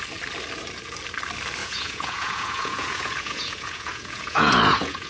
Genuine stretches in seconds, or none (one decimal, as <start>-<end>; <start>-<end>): 0.0-1.6